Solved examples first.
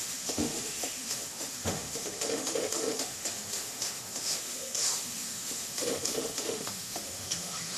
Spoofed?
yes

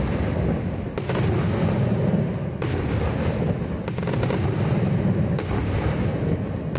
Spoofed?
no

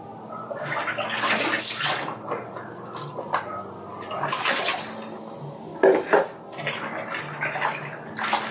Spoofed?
no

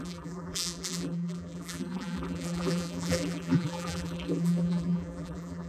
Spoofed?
yes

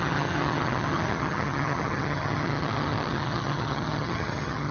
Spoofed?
yes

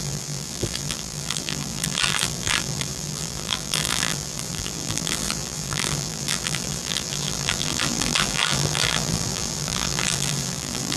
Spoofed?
yes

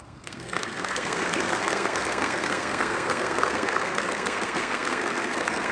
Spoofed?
yes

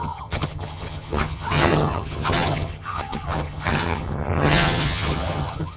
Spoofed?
yes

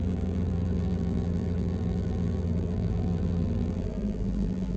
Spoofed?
yes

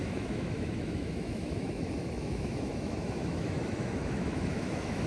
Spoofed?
yes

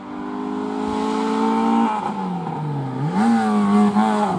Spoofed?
no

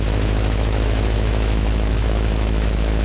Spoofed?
yes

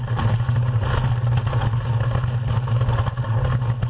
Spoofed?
no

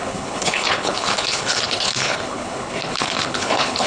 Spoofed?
yes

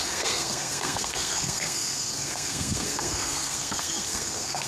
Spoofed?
yes